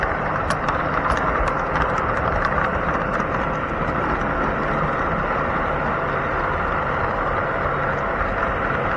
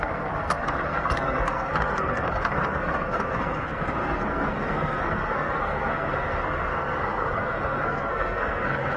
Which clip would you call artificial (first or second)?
second